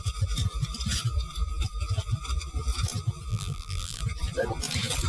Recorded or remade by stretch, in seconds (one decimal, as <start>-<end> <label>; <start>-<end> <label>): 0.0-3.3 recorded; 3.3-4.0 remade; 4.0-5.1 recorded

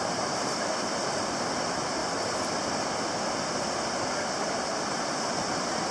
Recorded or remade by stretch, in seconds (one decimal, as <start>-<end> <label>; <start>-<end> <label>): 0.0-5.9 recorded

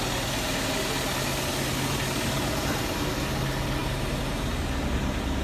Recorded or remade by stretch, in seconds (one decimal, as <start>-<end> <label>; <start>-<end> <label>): 0.0-5.4 recorded

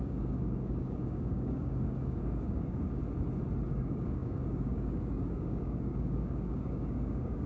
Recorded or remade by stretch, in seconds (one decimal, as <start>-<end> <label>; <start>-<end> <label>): 0.0-3.0 remade; 3.0-3.7 recorded; 3.7-7.5 remade

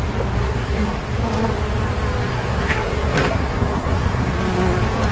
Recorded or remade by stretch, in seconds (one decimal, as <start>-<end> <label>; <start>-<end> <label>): 0.0-0.4 recorded; 0.4-1.0 remade; 1.0-2.3 recorded; 2.3-4.3 remade; 4.3-5.1 recorded

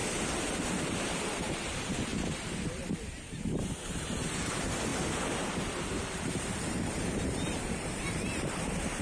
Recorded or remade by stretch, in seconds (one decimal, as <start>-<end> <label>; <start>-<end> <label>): 0.0-0.9 recorded; 0.9-4.9 remade; 4.9-6.0 recorded; 6.0-9.0 remade

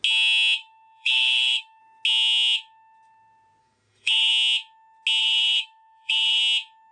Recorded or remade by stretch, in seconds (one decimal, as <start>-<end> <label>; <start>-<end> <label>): 0.0-0.6 recorded; 0.6-1.8 remade; 1.8-3.6 recorded; 3.6-4.3 remade; 4.3-5.2 recorded; 5.2-6.4 remade; 6.4-6.9 recorded